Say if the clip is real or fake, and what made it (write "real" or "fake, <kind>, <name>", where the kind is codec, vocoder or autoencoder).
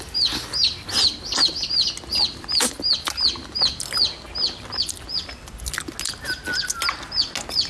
real